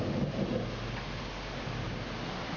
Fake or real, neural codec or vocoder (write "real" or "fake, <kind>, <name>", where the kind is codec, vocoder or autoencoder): real